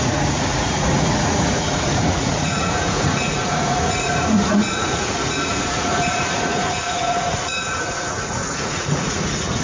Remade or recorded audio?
remade